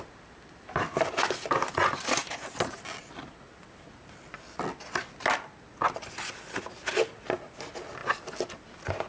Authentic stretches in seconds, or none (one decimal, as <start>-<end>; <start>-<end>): 0.0-9.1